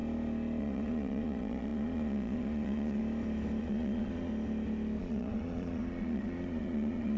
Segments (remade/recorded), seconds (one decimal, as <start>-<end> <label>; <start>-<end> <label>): 0.0-0.6 recorded; 0.6-3.0 remade; 3.0-3.6 recorded; 3.6-4.3 remade; 4.3-5.0 recorded; 5.0-7.2 remade

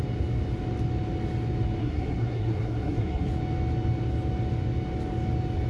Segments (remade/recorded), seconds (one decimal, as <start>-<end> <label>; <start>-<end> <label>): 0.0-1.8 recorded; 1.8-3.3 remade; 3.3-5.7 recorded

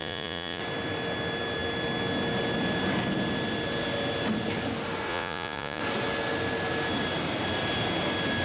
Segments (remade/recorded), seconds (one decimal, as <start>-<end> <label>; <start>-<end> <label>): 0.0-0.6 remade; 0.6-5.1 recorded; 5.1-5.8 remade; 5.8-8.4 recorded

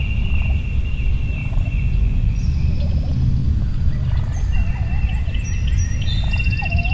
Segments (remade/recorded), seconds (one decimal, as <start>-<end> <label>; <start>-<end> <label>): 0.0-1.4 recorded; 1.4-2.4 remade; 2.4-6.9 recorded